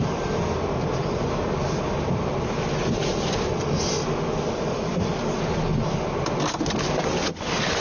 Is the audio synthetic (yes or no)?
no